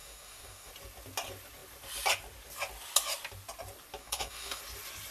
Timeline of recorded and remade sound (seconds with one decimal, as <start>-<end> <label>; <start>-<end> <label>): 0.0-0.7 remade; 0.7-4.0 recorded; 4.0-4.6 remade; 4.6-5.1 recorded